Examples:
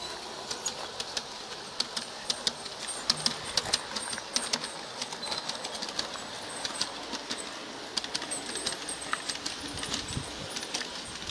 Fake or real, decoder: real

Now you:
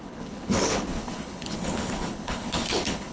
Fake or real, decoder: fake, codec, HILCodec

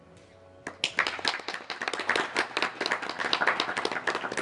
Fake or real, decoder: real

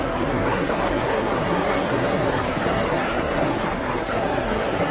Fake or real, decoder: fake, codec, SNAC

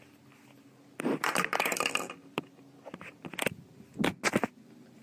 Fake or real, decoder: real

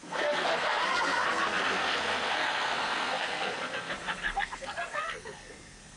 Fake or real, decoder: fake, codec, SNAC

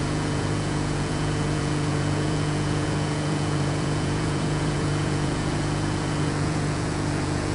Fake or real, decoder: fake, vocoder, Vocos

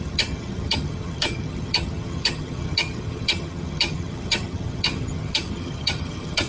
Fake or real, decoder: fake, vocoder, HiFi-GAN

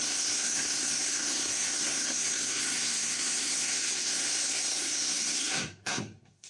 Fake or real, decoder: fake, codec, SNAC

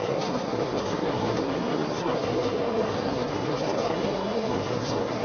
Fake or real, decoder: fake, codec, SNAC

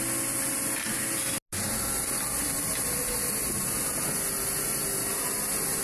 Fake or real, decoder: real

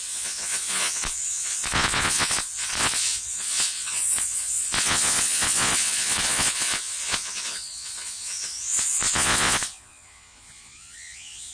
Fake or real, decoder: fake, vocoder, Vocos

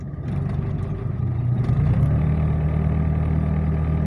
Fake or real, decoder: real